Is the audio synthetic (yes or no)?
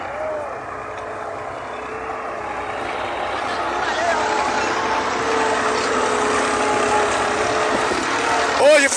no